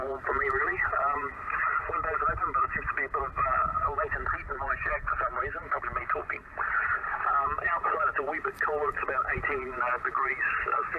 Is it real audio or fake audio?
real